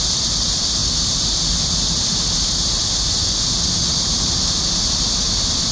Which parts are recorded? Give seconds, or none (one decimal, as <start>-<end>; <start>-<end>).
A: 0.0-5.7